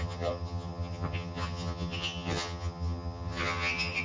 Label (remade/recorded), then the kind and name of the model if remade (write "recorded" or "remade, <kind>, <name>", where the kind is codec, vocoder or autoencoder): remade, vocoder, HiFi-GAN